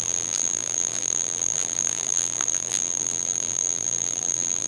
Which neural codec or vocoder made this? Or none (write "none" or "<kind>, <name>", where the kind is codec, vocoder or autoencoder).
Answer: vocoder, BigVGAN v2